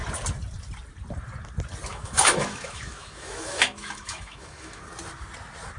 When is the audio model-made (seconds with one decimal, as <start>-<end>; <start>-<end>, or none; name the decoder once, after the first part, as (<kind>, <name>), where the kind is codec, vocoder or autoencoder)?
1.9-4.8 (autoencoder, DAC-VAE)